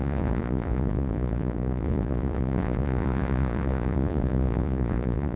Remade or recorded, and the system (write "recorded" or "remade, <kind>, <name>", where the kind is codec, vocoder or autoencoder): remade, vocoder, Vocos